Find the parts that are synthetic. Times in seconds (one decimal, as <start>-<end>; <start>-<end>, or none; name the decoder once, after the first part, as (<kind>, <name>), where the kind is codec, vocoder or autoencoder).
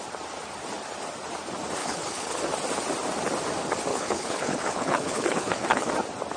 1.8-2.4 (codec, HILCodec); 3.9-5.9